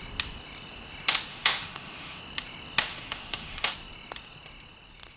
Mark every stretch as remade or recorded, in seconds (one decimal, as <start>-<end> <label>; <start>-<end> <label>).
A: 0.0-1.3 recorded; 1.3-2.2 remade; 2.2-2.9 recorded; 2.9-3.7 remade; 3.7-5.2 recorded